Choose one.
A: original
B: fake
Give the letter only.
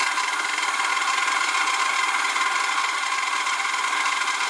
A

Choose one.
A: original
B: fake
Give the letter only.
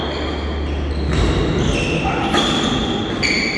A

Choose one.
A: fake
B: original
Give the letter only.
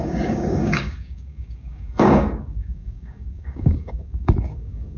A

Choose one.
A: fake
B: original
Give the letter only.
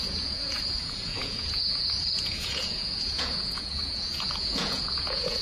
A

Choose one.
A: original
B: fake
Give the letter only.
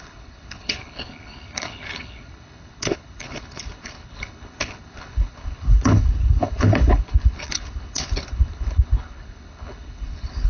B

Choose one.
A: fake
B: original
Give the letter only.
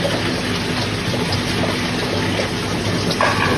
B